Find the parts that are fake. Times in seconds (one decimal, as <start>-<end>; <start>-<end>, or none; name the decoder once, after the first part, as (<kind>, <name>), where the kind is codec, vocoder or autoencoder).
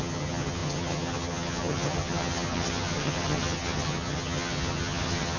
0.0-5.4 (vocoder, HiFi-GAN)